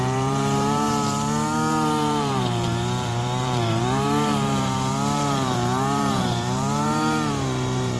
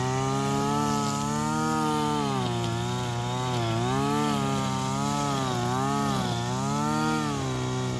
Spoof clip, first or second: first